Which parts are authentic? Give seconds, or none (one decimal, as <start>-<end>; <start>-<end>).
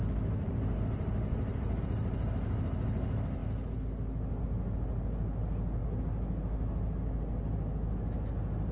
0.0-1.3; 1.8-8.7